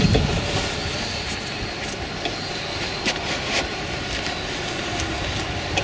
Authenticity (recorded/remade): recorded